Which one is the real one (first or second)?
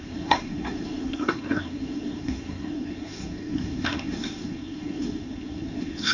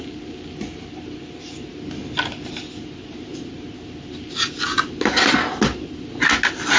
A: second